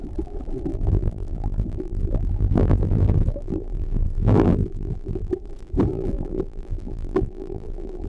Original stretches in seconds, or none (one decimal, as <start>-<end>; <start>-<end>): 0.0-0.7; 5.3-5.9